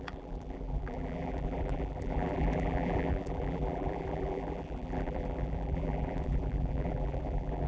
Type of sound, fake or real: fake